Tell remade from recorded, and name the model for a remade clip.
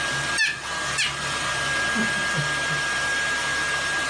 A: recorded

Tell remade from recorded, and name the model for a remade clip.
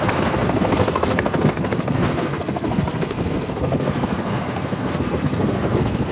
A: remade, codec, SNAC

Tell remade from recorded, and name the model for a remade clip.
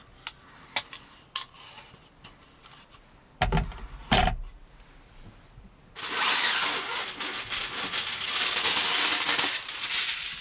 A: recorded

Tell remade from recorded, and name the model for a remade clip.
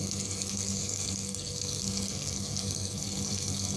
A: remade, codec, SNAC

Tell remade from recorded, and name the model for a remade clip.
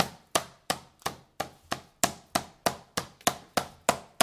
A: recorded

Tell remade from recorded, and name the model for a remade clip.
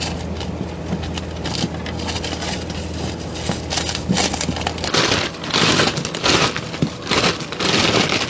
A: recorded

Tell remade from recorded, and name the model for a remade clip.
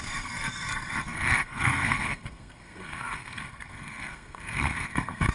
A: remade, codec, SNAC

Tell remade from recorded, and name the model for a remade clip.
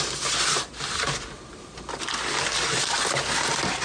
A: recorded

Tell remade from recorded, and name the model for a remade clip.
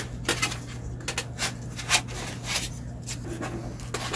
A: recorded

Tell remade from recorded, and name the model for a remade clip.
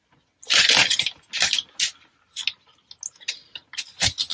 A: recorded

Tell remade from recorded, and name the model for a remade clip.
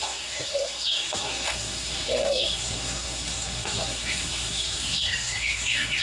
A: remade, codec, SNAC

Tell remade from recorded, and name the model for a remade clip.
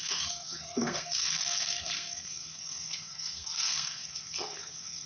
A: remade, codec, SNAC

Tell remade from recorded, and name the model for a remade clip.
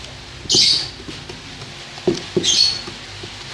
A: recorded